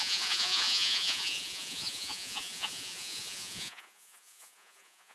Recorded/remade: remade